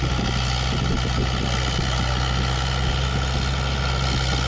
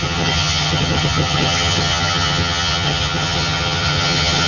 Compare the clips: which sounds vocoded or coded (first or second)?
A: second